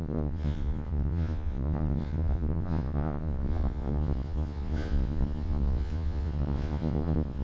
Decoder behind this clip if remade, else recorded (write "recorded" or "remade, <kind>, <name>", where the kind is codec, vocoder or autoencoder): remade, vocoder, Vocos